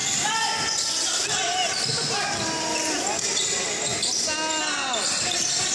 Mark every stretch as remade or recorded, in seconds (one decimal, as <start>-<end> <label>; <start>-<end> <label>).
0.0-5.7 recorded